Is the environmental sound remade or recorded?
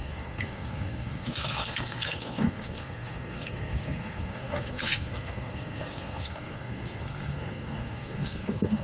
remade